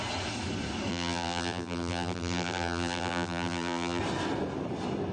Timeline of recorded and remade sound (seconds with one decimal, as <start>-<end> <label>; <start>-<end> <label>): 0.0-0.9 recorded; 0.9-4.0 remade; 4.0-5.1 recorded